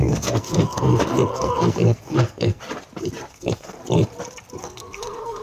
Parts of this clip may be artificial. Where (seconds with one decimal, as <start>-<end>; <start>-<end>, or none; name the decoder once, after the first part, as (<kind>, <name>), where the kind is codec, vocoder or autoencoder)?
0.0-2.6 (codec, SNAC); 3.3-3.8; 4.6-5.4